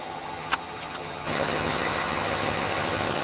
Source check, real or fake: fake